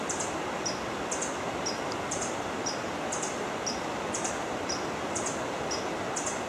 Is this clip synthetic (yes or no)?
no